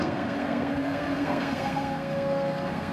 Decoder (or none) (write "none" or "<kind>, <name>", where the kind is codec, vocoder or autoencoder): codec, SNAC